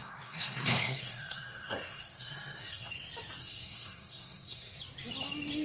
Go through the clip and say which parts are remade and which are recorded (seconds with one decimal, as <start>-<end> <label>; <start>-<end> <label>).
0.0-2.9 remade; 2.9-3.4 recorded; 3.4-4.8 remade; 4.8-5.6 recorded